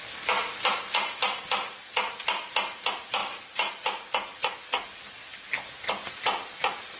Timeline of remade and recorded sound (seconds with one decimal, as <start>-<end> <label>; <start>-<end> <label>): 0.0-3.2 recorded; 3.2-3.7 remade; 3.7-7.0 recorded